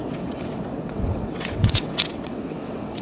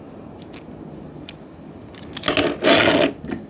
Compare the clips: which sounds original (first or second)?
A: second